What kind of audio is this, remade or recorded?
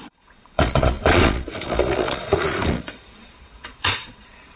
remade